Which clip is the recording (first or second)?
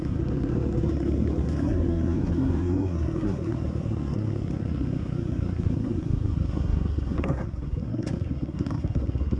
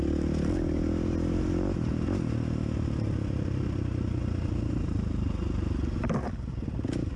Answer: second